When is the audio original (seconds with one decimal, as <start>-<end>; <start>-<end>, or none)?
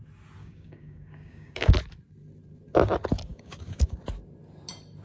0.0-0.4; 1.7-3.3; 4.0-5.0